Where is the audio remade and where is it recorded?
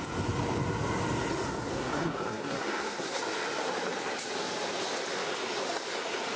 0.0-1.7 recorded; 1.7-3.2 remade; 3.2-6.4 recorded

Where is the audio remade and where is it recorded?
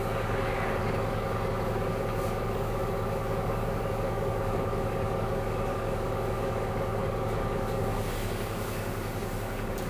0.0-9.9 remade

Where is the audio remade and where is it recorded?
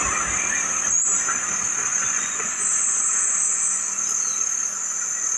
0.0-1.9 recorded; 1.9-2.6 remade; 2.6-5.4 recorded